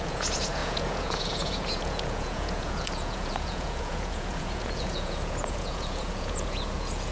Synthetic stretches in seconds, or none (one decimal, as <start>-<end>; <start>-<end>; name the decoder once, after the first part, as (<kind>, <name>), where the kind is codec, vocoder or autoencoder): 0.0-7.1 (vocoder, Vocos)